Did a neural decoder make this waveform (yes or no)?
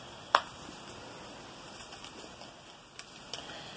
no